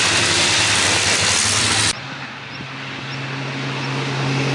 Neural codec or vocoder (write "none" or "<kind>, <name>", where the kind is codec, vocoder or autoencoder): none